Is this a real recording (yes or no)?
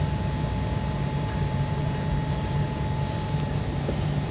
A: no